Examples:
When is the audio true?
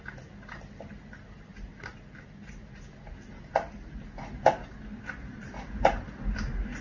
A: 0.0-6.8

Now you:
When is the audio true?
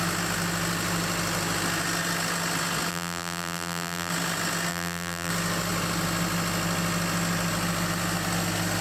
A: 0.0-2.9; 4.1-4.7; 5.3-8.8